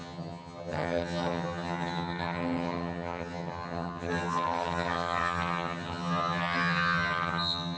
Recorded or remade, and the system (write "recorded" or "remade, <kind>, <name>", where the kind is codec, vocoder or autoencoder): remade, vocoder, HiFi-GAN